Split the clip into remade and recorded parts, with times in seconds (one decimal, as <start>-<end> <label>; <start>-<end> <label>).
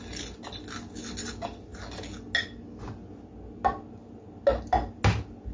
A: 0.0-5.5 recorded